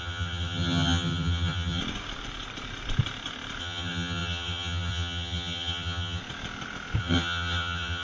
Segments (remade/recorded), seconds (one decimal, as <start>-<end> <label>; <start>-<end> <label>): 0.0-1.8 remade; 1.8-3.6 recorded; 3.6-6.2 remade; 6.2-7.0 recorded; 7.0-8.0 remade